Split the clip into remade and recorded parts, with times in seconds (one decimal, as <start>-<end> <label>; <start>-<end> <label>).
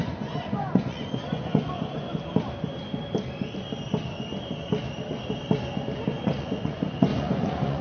0.0-2.1 remade; 2.1-6.2 recorded; 6.2-7.8 remade